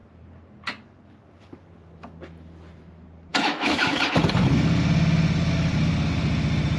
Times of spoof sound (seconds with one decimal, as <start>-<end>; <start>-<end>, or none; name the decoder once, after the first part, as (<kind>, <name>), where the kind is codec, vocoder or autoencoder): 3.3-4.0 (autoencoder, DAC-VAE)